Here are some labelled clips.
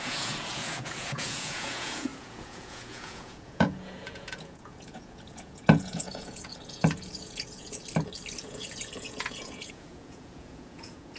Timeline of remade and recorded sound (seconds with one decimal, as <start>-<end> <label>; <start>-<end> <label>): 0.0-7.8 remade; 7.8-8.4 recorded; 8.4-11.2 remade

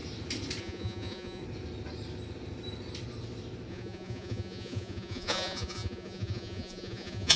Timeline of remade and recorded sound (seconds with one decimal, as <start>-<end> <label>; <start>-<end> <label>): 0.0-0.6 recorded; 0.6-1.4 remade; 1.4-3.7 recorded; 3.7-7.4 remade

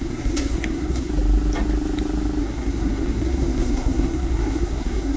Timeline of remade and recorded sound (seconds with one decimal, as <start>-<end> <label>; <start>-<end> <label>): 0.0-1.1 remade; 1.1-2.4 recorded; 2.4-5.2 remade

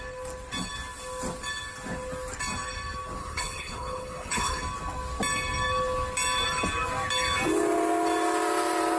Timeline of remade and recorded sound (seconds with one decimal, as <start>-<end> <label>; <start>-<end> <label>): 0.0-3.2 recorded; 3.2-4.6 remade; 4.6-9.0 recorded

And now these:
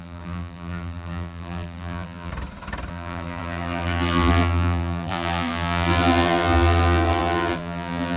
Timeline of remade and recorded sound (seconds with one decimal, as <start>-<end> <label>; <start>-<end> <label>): 0.0-2.3 remade; 2.3-2.9 recorded; 2.9-8.2 remade